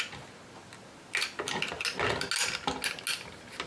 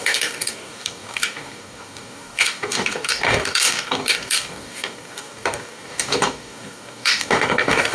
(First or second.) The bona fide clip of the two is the first